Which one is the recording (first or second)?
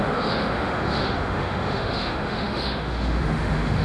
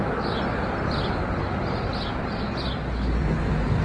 second